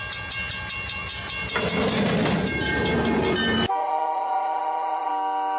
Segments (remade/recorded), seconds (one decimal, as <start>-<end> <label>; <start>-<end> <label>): 0.0-3.8 recorded; 3.8-5.1 remade; 5.1-5.6 recorded